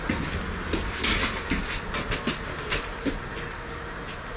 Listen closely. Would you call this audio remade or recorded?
recorded